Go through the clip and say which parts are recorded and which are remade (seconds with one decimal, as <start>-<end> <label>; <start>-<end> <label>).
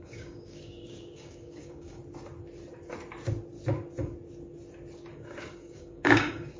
0.0-2.0 remade; 2.0-5.1 recorded; 5.1-6.6 remade